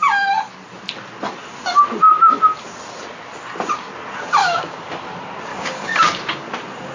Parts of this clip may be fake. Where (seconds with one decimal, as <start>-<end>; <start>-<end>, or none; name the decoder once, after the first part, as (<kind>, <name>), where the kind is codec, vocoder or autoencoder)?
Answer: 4.4-4.9 (codec, DAC); 5.5-6.5